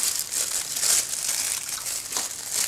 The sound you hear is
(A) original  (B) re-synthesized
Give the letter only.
A